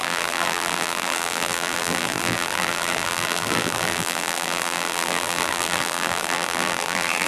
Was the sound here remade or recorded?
remade